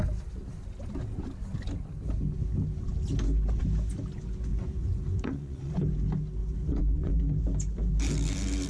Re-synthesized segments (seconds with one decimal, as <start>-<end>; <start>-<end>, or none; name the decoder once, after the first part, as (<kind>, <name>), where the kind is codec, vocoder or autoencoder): 4.5-5.7 (vocoder, Vocos); 6.4-7.2